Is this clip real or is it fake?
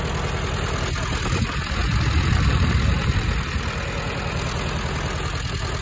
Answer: real